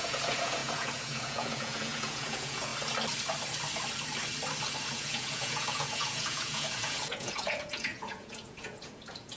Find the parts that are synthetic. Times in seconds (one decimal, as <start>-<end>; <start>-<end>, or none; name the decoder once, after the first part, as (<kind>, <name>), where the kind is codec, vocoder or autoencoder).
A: 0.0-2.7 (vocoder, Vocos); 4.9-9.4